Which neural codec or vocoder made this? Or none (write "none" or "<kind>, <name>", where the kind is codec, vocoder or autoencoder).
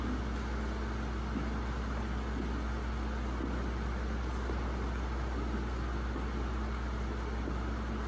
none